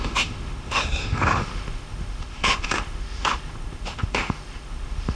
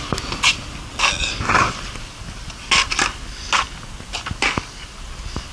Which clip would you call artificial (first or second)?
first